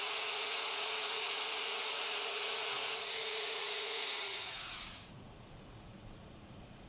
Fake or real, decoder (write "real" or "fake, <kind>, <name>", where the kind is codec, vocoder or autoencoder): fake, vocoder, Vocos